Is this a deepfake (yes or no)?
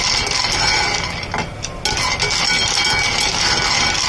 no